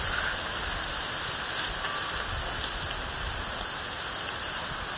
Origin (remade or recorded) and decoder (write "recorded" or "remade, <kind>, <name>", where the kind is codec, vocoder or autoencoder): recorded